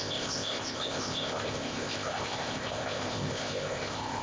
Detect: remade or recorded remade